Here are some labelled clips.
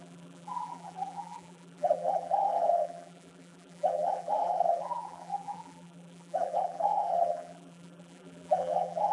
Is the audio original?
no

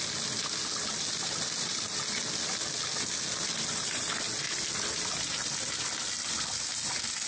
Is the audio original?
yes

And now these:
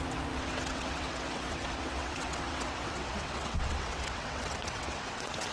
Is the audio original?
no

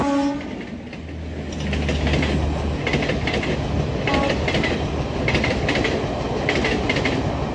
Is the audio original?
yes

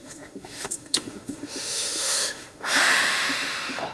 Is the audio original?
no